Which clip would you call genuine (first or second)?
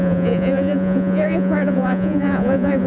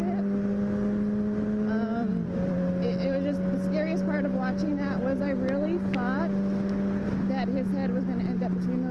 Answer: second